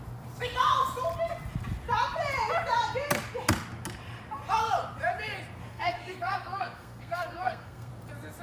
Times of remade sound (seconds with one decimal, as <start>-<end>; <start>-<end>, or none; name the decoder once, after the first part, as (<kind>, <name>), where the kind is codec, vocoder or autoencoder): 5.7-7.9 (codec, SNAC)